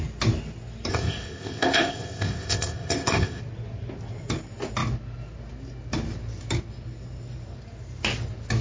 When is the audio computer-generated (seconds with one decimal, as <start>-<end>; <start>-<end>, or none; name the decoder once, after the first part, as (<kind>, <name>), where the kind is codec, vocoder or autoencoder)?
0.9-3.4 (codec, ZipCodec)